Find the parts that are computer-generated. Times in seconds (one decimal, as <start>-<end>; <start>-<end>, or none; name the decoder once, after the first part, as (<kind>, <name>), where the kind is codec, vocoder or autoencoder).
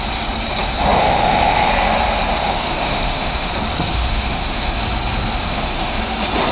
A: 1.0-1.7 (autoencoder, DAC-VAE); 2.4-3.5; 3.9-4.8; 5.4-6.0